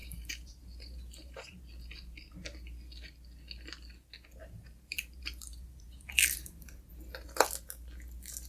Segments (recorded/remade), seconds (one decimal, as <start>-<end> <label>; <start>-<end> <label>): 0.0-1.6 remade; 1.6-4.4 recorded; 4.4-6.9 remade; 6.9-8.5 recorded